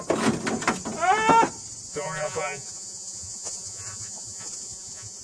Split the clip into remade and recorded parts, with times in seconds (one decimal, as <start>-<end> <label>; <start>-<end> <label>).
0.0-1.9 recorded; 1.9-5.2 remade